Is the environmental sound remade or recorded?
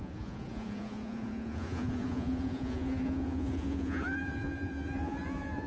remade